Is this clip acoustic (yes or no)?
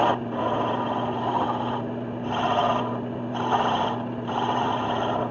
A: yes